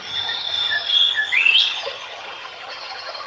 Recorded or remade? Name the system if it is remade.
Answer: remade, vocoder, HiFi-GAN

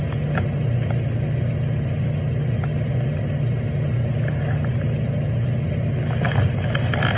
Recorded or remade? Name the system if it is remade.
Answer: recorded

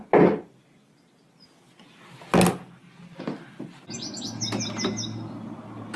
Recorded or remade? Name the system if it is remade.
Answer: recorded